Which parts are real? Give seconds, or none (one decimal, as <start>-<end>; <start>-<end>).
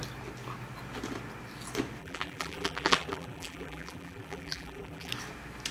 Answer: 0.0-2.0; 5.1-5.7